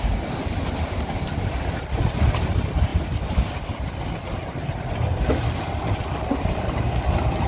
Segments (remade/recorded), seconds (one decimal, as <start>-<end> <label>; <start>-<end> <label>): 0.0-7.5 recorded